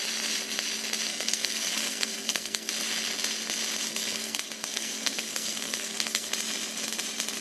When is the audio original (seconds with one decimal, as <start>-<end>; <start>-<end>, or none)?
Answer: 0.0-1.1; 2.7-3.9; 6.3-7.4